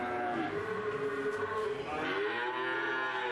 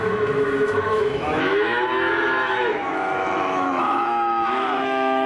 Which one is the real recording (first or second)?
first